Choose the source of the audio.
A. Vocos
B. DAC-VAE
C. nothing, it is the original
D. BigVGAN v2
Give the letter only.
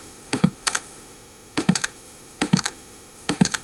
B